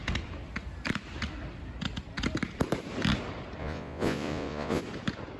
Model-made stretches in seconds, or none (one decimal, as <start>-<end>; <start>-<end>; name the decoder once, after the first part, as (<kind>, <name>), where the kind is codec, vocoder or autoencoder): 3.6-4.8 (vocoder, Vocos)